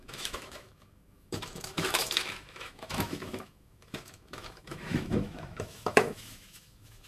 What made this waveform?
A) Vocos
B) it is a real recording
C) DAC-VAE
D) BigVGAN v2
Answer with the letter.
C